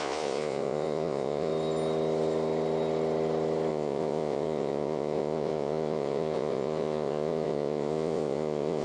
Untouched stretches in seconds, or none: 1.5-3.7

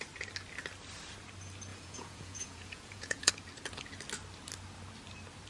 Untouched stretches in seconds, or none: 0.0-1.7; 3.3-5.5

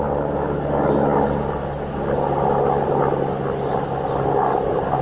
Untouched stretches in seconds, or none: 0.0-5.0

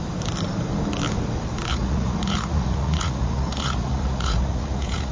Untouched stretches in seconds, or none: 0.0-1.7